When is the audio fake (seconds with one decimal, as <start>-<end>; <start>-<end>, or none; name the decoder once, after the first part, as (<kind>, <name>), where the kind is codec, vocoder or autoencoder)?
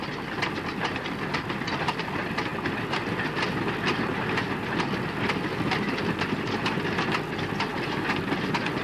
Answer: none